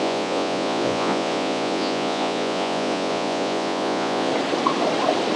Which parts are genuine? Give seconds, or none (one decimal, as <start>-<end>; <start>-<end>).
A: 4.3-5.4